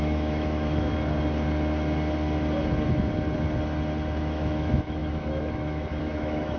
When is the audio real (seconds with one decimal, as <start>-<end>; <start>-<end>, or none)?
0.9-4.2